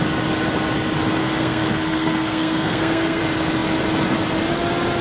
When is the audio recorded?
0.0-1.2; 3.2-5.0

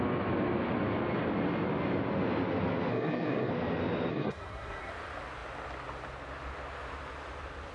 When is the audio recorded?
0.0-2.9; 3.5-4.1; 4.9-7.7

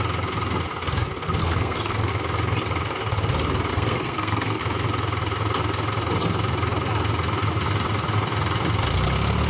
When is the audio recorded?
0.0-1.4; 2.1-3.7; 4.6-9.5

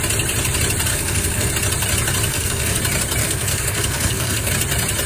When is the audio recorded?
0.0-0.9; 1.5-2.3; 2.8-3.2; 4.5-5.1

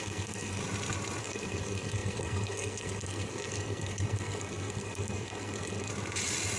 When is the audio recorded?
0.6-1.2; 5.9-6.6

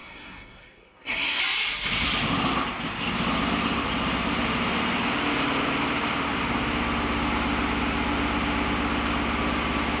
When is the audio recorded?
1.4-10.0

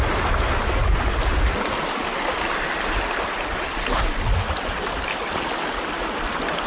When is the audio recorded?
0.0-6.7

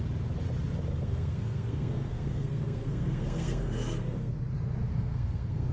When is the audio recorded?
0.0-0.9; 4.3-4.9